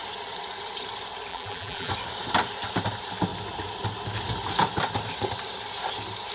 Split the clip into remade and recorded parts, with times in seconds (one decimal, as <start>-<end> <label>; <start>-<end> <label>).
0.0-1.3 recorded; 1.3-1.9 remade; 1.9-6.3 recorded